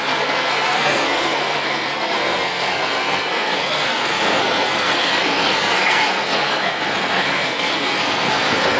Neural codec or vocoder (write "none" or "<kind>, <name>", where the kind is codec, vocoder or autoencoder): codec, SNAC